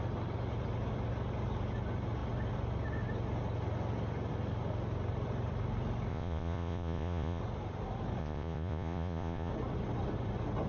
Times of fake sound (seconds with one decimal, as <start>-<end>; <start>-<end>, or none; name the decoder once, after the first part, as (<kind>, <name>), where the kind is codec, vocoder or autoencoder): 6.1-7.4 (vocoder, Vocos); 8.2-9.5